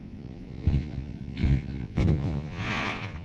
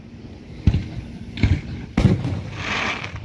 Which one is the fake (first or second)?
first